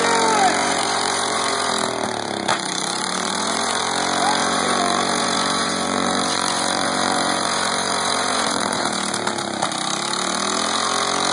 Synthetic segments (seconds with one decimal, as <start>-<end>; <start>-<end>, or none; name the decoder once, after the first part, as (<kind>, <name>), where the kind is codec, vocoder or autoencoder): 0.6-1.7 (vocoder, Vocos); 2.5-3.8; 4.4-8.8